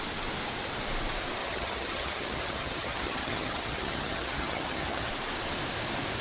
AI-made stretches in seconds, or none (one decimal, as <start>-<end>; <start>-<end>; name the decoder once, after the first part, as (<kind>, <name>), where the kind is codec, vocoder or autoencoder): 1.4-5.1 (vocoder, HiFi-GAN)